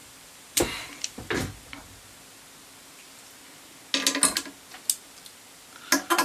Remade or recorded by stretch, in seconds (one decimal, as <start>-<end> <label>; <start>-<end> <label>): 0.0-1.3 remade; 1.3-6.2 recorded